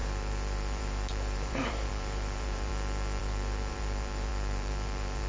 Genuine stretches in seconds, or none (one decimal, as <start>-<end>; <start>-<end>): 2.7-3.2